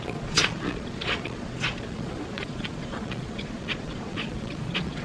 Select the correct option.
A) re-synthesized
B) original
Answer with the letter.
A